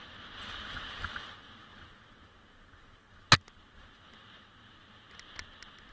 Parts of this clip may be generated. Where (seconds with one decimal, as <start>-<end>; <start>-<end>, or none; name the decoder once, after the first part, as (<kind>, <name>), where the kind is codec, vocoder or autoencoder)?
none